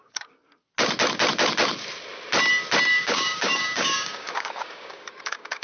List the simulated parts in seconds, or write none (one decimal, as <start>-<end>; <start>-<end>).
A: 0.0-0.4; 3.0-5.6